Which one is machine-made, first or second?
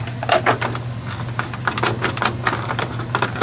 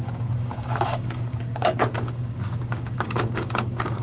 second